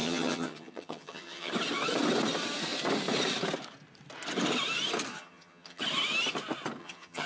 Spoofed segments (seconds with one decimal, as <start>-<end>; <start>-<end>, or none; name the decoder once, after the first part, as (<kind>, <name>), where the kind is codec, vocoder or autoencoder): 0.0-1.5 (vocoder, HiFi-GAN); 5.1-5.8; 6.8-7.3